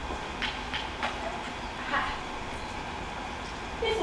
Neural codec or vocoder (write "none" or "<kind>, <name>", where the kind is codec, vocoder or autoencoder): none